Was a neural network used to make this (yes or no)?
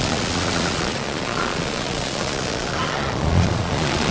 yes